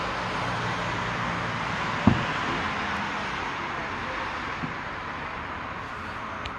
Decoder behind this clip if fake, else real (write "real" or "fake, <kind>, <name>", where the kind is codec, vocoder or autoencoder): real